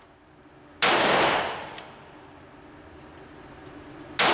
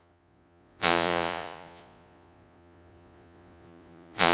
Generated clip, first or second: second